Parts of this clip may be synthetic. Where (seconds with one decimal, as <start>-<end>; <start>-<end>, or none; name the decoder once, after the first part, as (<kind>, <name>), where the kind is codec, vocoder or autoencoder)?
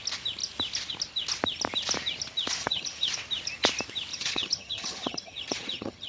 2.6-3.1 (vocoder, HiFi-GAN); 4.1-6.1